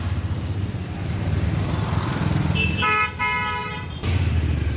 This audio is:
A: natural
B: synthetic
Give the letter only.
A